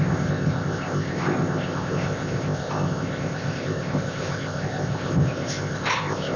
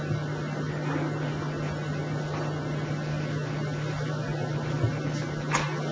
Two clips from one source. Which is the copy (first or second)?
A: first